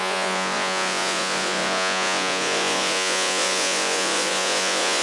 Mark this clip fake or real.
fake